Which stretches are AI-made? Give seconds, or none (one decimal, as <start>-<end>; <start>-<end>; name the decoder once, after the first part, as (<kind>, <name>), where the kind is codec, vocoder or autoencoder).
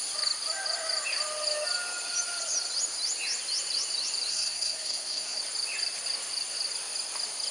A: 4.3-5.4 (codec, SNAC)